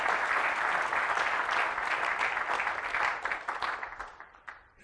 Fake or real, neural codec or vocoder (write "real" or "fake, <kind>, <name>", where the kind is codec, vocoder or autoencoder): real